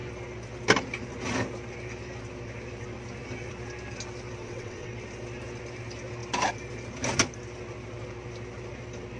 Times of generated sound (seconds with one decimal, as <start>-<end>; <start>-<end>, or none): 4.4-4.9